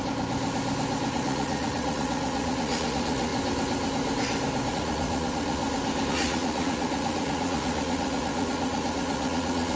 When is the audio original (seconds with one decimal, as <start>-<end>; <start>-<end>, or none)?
0.0-1.1; 3.3-4.7; 5.6-6.1